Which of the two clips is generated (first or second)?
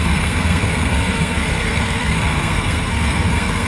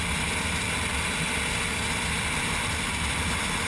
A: first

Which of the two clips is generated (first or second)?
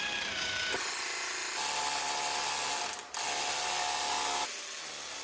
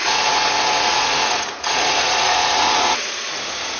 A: second